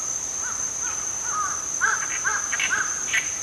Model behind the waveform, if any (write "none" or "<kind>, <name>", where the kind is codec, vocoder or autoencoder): vocoder, BigVGAN v2